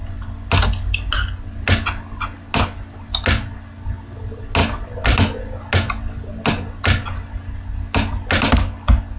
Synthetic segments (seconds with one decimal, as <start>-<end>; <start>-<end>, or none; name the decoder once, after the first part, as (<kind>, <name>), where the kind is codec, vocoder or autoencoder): none

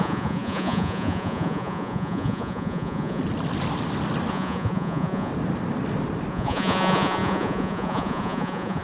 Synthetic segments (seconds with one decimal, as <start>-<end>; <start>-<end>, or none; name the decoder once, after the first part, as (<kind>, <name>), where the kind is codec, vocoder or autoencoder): 0.0-3.2 (vocoder, Vocos); 4.3-5.3; 6.3-8.8

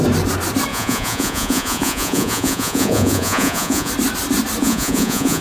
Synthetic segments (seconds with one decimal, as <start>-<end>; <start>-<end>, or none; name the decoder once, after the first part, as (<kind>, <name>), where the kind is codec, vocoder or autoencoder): 0.7-3.9 (vocoder, Vocos); 4.6-5.4

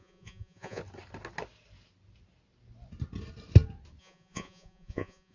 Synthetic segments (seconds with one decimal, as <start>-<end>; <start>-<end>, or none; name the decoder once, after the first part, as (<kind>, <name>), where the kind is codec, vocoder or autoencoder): 0.0-0.8 (vocoder, Vocos); 4.0-5.3

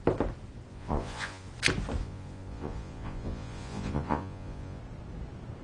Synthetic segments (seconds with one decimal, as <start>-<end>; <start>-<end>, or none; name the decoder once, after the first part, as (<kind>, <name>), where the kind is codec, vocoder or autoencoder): 0.7-1.5 (vocoder, Vocos); 2.0-4.8

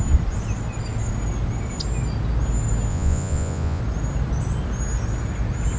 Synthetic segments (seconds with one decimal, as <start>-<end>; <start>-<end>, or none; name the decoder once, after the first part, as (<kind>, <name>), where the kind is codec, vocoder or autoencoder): 2.9-3.8 (vocoder, Vocos)